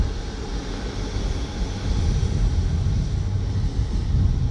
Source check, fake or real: real